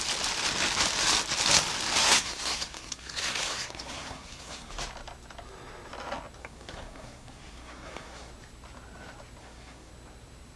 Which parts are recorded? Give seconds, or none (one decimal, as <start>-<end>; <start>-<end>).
0.0-2.0; 4.7-6.4; 8.3-9.4; 9.9-10.6